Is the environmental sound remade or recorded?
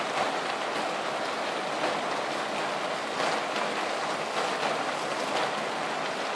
recorded